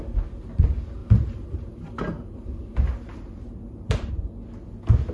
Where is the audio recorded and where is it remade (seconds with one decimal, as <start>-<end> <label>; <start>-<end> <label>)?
0.0-1.0 recorded; 1.0-4.1 remade; 4.1-5.1 recorded